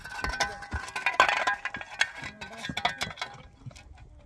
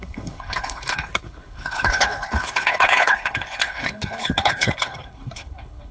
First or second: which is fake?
second